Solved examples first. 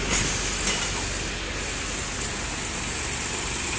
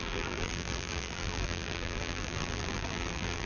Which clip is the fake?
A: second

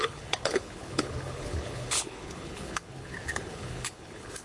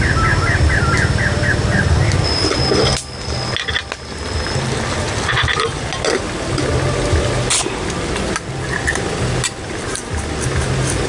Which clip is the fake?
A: first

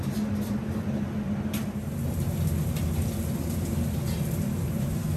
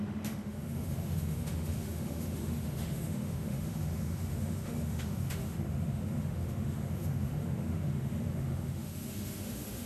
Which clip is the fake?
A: second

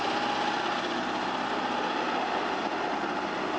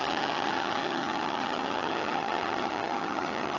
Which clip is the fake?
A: second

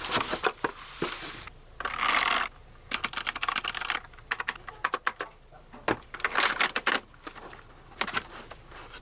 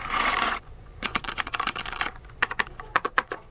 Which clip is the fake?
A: second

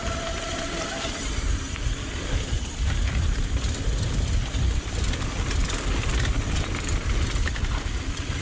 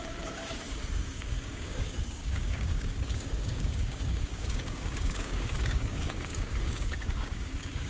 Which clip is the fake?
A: second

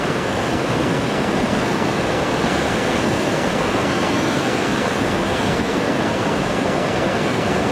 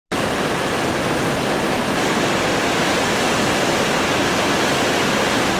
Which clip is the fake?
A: first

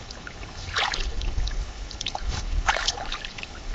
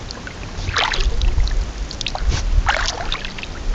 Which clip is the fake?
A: first